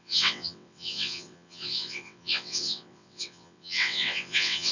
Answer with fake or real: fake